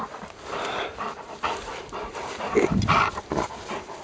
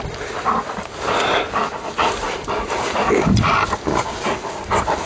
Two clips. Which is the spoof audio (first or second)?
first